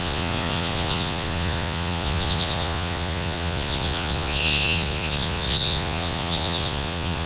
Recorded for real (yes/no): no